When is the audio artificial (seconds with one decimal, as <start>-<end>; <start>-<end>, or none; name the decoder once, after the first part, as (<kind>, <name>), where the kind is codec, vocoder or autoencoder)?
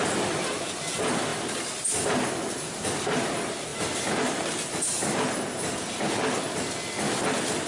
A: none